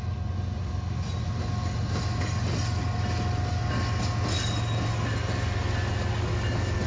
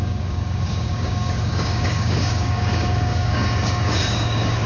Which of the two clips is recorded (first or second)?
first